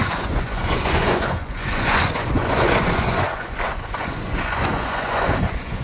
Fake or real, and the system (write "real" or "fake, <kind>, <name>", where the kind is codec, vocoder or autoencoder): fake, vocoder, Vocos